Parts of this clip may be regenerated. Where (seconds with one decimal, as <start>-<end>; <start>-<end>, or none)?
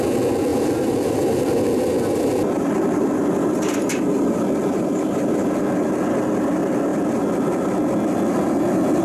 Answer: 0.5-5.3